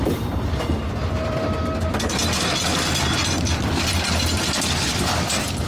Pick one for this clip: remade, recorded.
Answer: remade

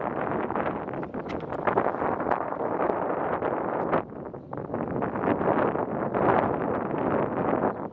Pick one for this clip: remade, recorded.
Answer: recorded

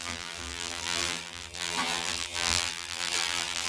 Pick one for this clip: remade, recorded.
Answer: remade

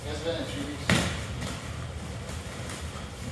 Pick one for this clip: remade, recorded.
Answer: recorded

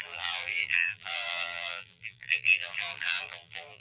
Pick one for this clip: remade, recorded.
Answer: remade